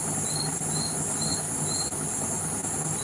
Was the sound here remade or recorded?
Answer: recorded